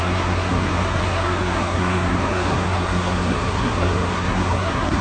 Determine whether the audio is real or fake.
fake